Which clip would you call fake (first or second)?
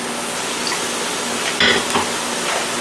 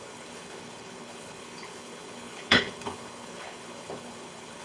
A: second